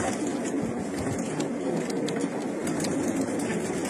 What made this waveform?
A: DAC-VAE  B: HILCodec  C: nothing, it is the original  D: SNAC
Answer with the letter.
C